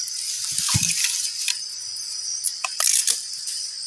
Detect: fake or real real